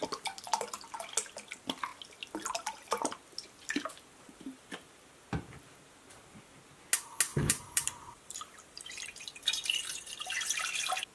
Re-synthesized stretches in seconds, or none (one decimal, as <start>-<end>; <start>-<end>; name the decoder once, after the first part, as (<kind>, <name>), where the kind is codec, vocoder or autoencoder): 7.3-10.7 (vocoder, BigVGAN v2)